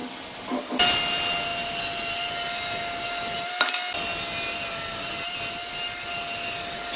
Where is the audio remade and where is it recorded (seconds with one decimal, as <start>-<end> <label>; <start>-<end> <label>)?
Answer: 0.0-7.0 recorded